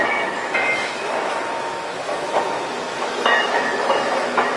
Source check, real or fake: fake